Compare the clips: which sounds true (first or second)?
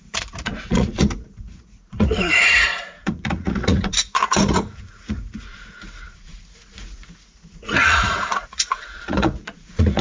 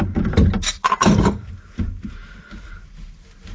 second